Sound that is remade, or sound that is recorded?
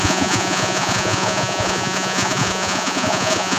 remade